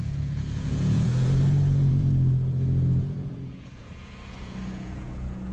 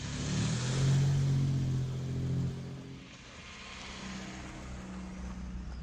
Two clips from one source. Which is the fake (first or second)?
first